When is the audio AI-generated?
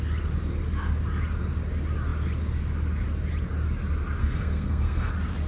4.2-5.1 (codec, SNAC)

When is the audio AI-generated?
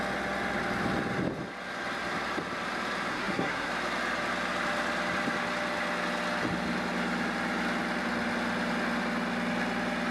3.1-3.7 (codec, SNAC)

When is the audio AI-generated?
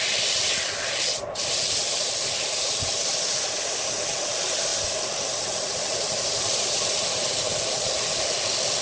none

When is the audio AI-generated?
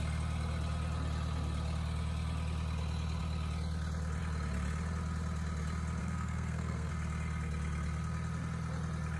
6.0-6.9 (codec, SNAC)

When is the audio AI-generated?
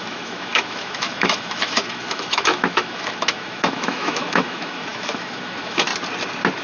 0.0-5.9 (autoencoder, DAC-VAE)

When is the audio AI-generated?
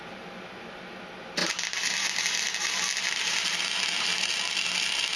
none